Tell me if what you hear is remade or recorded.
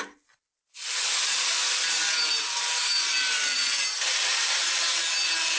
recorded